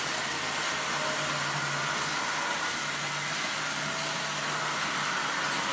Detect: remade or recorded recorded